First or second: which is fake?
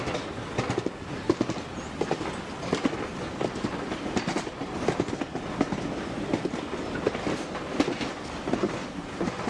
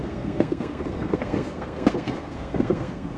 second